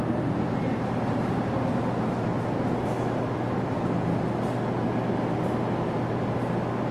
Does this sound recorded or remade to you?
recorded